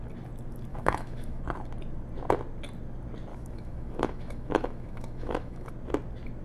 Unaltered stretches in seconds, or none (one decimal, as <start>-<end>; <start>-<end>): 0.0-0.7; 1.4-3.3; 5.7-6.4